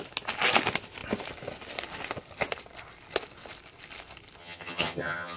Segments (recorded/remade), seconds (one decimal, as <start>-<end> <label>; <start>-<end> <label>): 0.0-4.4 recorded; 4.4-5.4 remade